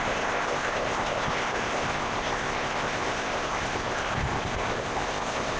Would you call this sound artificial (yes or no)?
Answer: yes